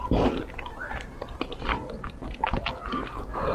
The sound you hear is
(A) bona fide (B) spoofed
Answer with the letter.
A